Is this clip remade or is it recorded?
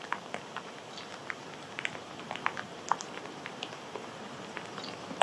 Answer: remade